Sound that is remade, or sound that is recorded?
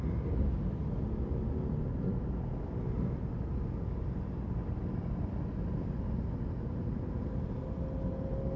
recorded